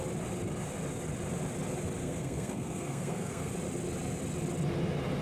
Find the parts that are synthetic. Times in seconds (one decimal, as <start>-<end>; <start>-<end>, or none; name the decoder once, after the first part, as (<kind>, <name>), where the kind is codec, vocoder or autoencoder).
2.0-3.5 (codec, SNAC)